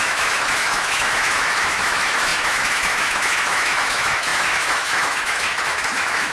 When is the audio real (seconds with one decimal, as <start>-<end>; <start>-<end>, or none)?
none